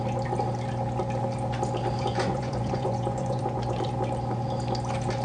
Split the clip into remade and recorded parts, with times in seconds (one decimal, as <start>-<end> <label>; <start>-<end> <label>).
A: 0.0-2.1 recorded; 2.1-3.4 remade; 3.4-5.2 recorded